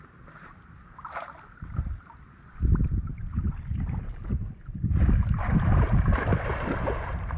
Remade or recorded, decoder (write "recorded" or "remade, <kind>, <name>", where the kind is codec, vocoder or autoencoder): remade, vocoder, BigVGAN v2